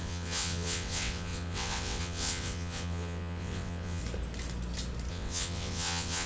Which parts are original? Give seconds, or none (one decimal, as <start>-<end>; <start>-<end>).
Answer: 4.0-5.1